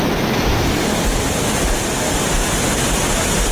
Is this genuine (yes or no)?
yes